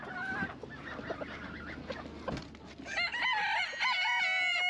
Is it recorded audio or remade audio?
recorded